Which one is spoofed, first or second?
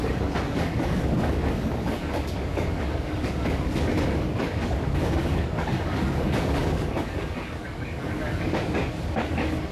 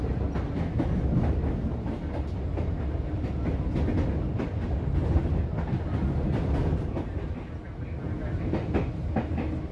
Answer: first